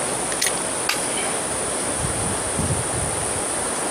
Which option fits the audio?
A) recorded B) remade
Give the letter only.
A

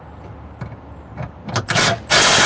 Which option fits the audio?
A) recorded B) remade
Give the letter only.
A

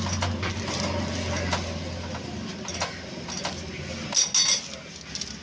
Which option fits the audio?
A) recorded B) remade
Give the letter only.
A